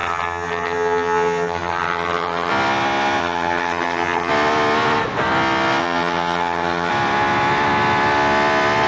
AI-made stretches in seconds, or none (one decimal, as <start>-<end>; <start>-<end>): 0.0-2.5; 3.2-4.3; 5.8-6.9